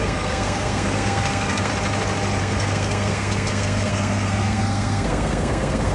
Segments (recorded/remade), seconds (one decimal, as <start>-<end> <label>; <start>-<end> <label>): 0.0-1.7 remade; 1.7-2.4 recorded; 2.4-5.9 remade

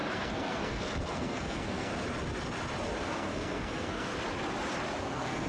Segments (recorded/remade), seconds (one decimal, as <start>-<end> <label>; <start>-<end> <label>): 0.0-1.9 remade; 1.9-2.9 recorded; 2.9-4.1 remade; 4.1-5.0 recorded; 5.0-5.5 remade

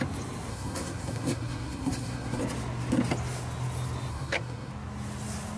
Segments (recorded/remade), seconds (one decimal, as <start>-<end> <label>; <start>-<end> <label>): 0.0-0.5 recorded; 0.5-2.4 remade; 2.4-4.1 recorded; 4.1-4.7 remade; 4.7-5.6 recorded

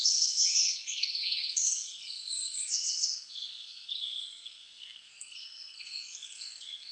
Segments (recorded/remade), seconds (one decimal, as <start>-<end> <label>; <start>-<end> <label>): 0.0-6.9 remade